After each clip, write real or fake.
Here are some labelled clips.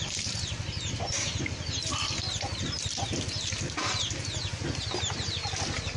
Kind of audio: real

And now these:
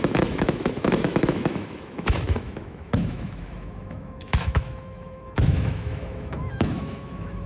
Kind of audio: fake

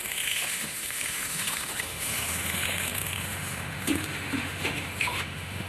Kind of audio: fake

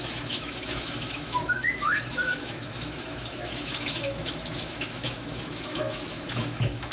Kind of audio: fake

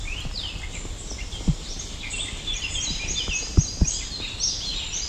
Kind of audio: real